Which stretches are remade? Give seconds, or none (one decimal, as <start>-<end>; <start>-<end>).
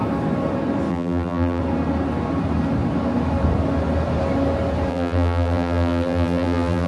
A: 0.9-1.6; 4.9-6.9